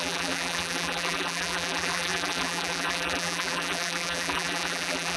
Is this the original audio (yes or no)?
no